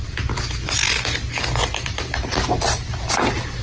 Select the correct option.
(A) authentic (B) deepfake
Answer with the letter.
A